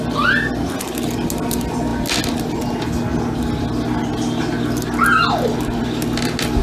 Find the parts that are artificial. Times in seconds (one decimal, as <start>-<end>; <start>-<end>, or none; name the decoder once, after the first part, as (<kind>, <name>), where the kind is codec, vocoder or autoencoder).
none